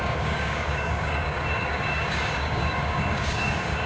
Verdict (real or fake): fake